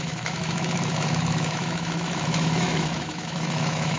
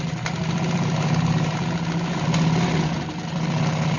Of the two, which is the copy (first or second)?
first